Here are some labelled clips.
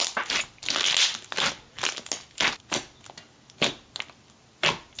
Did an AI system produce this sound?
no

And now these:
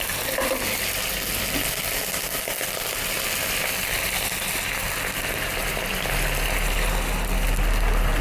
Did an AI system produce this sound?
no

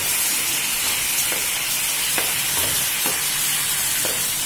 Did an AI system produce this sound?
no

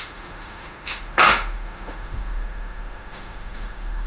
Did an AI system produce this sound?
yes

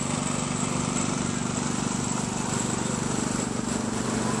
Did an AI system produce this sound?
no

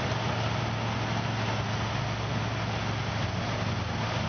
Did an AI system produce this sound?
no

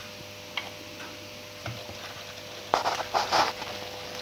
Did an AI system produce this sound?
no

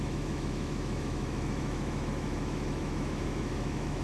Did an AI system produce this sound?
yes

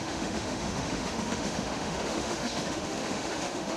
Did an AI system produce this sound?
yes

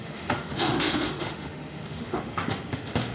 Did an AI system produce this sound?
yes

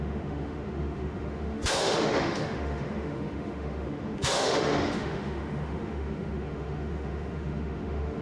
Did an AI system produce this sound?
yes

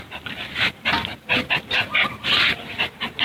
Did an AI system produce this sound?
no